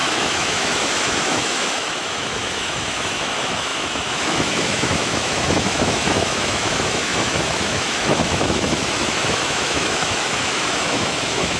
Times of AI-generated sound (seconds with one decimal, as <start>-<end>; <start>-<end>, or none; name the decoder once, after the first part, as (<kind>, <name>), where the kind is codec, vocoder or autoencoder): 0.0-11.6 (autoencoder, DAC-VAE)